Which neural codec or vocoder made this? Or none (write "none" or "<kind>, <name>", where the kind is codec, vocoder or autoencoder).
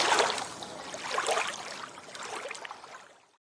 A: none